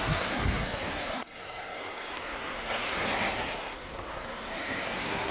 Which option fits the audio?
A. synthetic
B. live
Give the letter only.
A